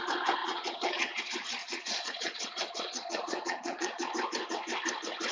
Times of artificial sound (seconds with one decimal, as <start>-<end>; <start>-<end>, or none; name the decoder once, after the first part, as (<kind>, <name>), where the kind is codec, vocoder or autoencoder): 0.4-1.2 (vocoder, Vocos); 1.6-4.1